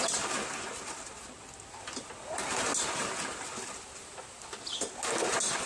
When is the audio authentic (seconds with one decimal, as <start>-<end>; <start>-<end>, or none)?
0.0-5.7